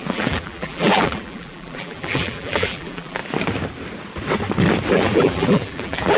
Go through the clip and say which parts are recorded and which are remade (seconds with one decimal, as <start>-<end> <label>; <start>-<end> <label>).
0.0-3.2 remade; 3.2-4.9 recorded; 4.9-6.2 remade